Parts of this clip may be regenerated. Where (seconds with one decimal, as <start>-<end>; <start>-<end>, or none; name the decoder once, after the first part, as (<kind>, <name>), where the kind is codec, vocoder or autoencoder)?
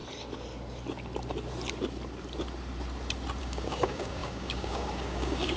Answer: 3.4-5.6 (codec, DAC)